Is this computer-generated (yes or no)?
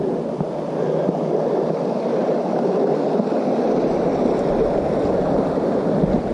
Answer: no